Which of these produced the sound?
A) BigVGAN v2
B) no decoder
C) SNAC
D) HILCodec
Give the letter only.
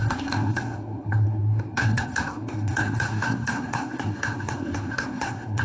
C